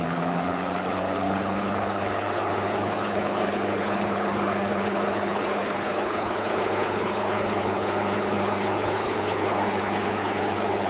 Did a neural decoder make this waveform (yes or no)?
yes